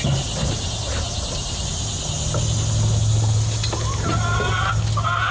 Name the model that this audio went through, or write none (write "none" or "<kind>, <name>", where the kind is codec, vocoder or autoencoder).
none